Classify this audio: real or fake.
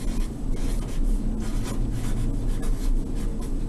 real